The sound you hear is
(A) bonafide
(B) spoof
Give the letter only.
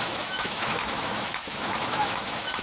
B